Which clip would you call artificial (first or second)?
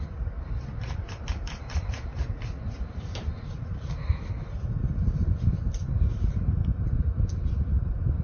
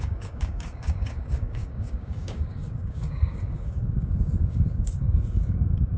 second